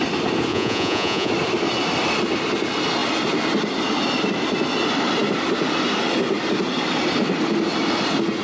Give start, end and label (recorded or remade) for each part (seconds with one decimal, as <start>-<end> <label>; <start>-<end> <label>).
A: 0.0-0.5 recorded; 0.5-1.3 remade; 1.3-8.4 recorded